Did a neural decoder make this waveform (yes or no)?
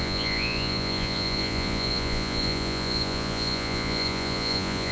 yes